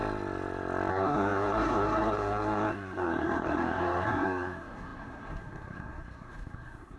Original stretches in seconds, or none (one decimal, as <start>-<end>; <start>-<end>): 0.0-0.9